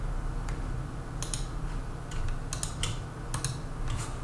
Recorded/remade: recorded